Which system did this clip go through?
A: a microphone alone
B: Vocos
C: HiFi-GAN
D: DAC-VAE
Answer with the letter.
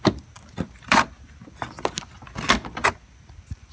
A